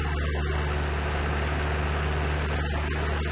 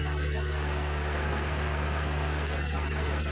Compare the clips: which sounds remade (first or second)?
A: second